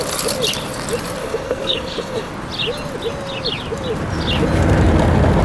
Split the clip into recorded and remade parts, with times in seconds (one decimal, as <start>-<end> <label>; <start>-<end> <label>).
0.0-1.2 recorded; 1.2-2.3 remade; 2.3-5.4 recorded